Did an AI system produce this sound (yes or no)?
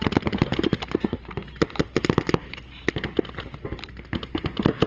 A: no